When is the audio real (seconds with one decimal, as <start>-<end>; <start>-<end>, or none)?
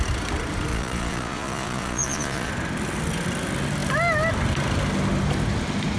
0.0-0.7; 2.5-6.0